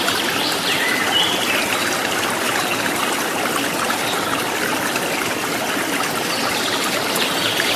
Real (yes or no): yes